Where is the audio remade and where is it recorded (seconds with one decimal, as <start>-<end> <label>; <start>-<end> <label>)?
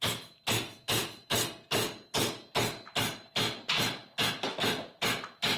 0.0-5.6 recorded